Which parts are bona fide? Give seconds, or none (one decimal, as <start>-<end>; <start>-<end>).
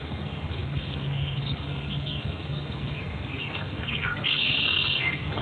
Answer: none